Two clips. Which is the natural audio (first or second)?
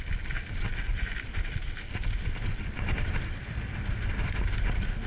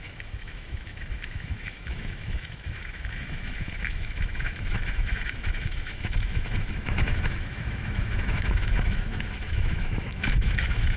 first